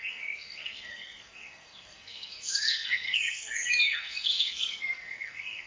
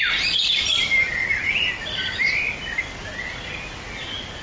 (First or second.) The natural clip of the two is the second